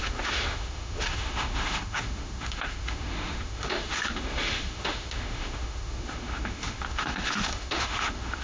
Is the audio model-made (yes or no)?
yes